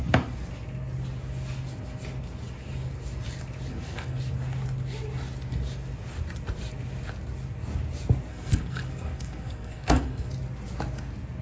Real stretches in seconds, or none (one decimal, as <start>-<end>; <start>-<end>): 0.0-3.7; 4.2-8.3; 10.3-11.4